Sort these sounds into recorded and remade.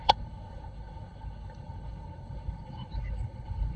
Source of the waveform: remade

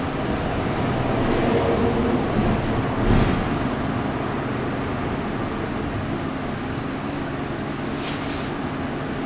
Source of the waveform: recorded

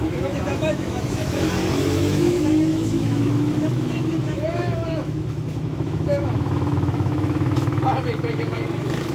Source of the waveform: remade